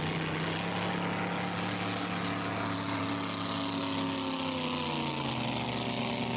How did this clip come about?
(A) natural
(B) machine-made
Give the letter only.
A